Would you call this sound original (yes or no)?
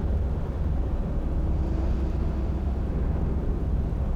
yes